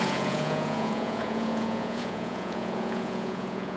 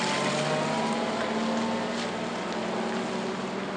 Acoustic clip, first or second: second